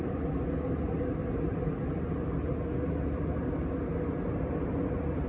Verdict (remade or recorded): recorded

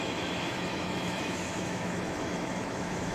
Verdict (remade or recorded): remade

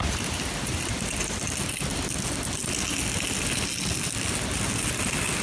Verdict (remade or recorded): recorded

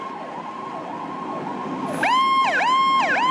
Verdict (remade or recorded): recorded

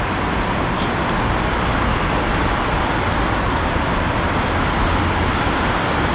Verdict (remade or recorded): recorded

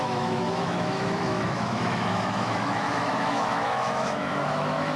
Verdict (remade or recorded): remade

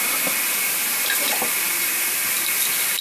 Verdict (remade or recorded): recorded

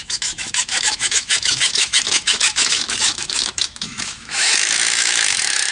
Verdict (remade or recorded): remade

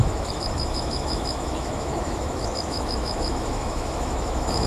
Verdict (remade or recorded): remade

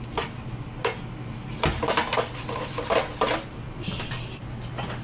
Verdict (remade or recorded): recorded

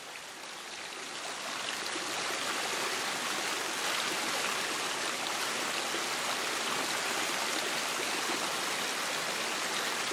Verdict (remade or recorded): recorded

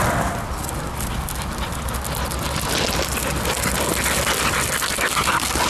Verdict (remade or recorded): recorded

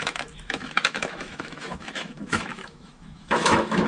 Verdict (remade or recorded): remade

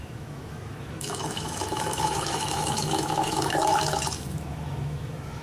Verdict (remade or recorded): remade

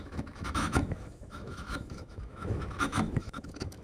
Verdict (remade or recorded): remade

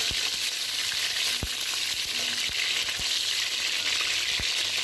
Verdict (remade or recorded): recorded